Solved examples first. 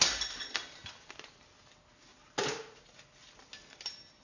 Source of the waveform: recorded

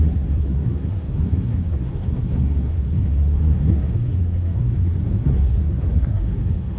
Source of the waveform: remade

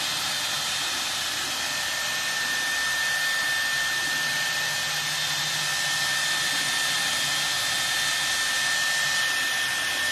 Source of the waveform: recorded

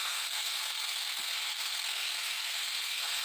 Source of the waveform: remade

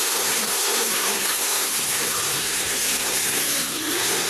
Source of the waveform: remade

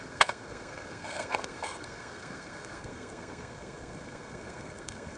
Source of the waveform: remade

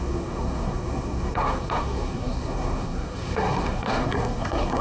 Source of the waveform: remade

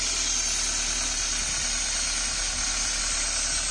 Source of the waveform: recorded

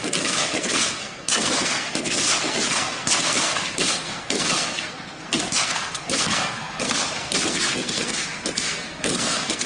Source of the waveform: remade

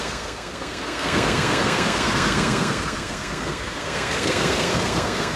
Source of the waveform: remade